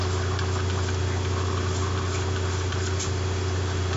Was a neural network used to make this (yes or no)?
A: no